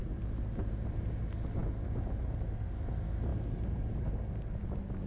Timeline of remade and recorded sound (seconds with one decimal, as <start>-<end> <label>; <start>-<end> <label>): 0.0-1.2 remade; 1.2-3.3 recorded; 3.3-4.1 remade; 4.1-5.1 recorded